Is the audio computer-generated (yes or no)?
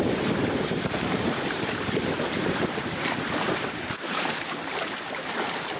yes